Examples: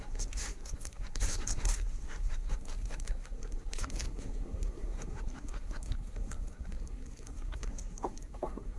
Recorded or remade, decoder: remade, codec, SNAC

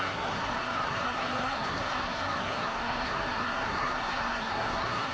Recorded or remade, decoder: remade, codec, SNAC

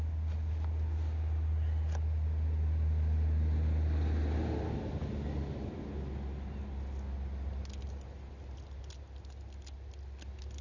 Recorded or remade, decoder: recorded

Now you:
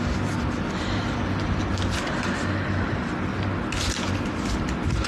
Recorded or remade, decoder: recorded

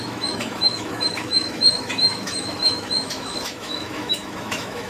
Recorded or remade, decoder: remade, autoencoder, DAC-VAE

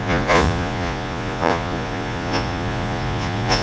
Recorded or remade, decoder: remade, vocoder, Vocos